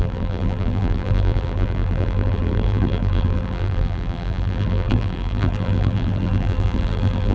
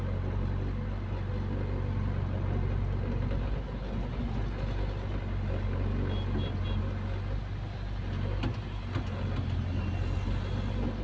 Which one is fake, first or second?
first